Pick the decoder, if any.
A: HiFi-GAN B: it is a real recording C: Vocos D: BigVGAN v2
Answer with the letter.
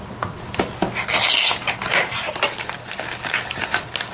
B